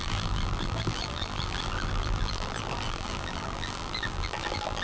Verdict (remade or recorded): remade